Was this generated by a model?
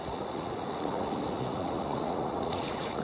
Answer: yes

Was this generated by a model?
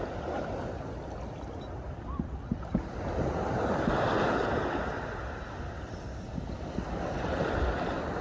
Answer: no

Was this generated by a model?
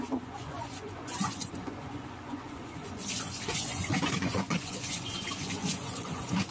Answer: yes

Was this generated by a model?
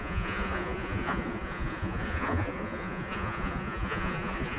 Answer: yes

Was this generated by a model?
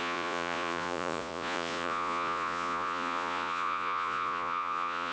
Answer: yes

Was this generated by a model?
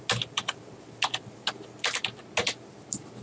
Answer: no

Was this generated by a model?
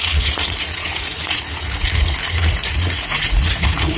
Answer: yes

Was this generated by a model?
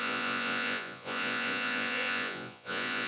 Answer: yes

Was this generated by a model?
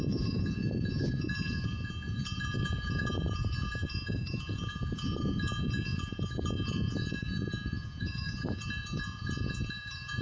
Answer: yes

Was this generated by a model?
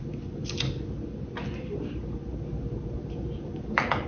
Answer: no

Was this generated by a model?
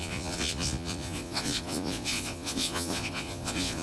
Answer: yes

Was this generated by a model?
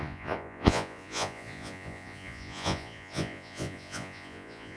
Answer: yes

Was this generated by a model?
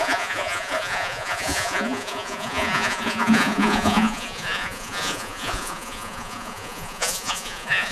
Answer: yes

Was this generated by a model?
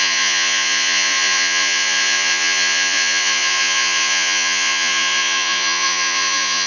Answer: yes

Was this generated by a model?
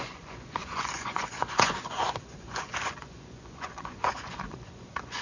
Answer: yes